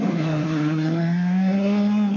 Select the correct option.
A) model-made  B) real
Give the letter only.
A